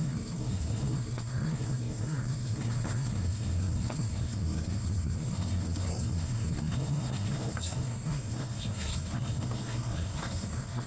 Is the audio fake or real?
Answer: fake